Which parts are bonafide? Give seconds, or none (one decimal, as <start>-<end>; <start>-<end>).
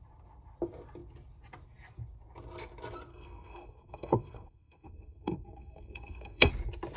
0.0-3.1; 6.5-7.0